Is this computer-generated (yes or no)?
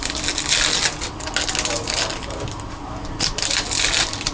no